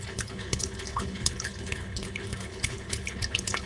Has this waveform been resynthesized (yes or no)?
yes